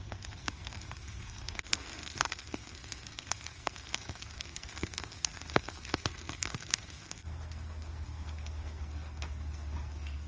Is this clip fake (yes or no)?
yes